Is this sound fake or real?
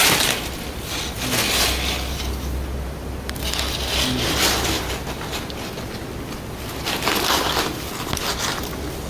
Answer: real